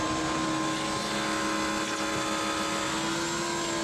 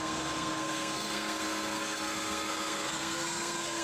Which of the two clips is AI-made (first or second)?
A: second